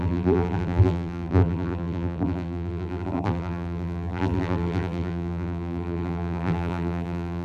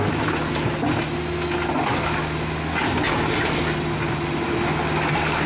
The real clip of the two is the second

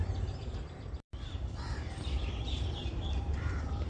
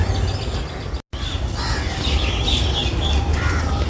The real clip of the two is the second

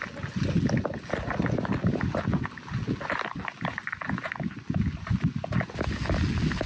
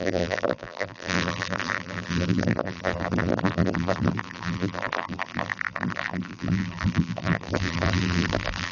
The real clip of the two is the first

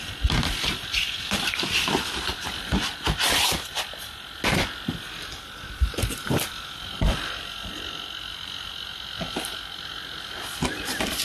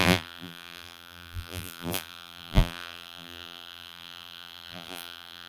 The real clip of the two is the first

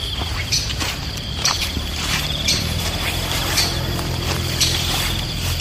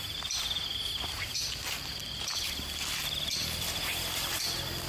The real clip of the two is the second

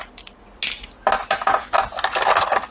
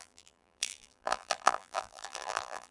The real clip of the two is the first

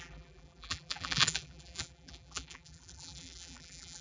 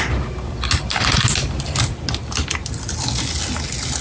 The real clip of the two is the second